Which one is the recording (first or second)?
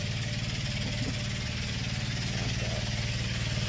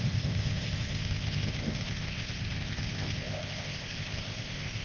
first